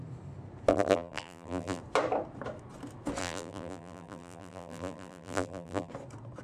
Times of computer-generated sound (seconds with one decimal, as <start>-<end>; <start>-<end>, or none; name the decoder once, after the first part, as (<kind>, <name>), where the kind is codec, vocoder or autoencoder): 0.7-1.8 (vocoder, BigVGAN v2); 3.2-5.9